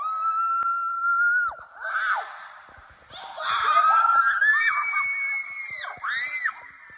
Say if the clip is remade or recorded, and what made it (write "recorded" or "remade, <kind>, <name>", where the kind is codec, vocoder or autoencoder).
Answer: recorded